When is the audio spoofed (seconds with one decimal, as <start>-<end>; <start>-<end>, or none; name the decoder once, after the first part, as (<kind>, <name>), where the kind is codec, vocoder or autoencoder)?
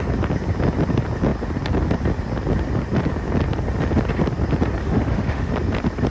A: 4.8-5.5 (autoencoder, DAC-VAE)